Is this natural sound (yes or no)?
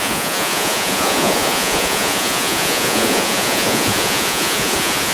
no